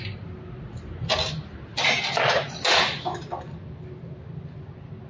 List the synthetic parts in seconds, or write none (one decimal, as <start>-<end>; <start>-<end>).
none